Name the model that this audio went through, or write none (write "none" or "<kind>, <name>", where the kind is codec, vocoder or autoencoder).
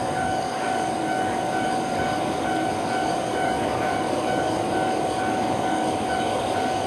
codec, DAC